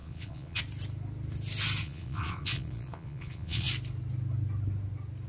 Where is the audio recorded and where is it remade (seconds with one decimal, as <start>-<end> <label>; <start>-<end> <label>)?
0.0-0.6 remade; 0.6-1.8 recorded; 1.8-3.7 remade; 3.7-5.3 recorded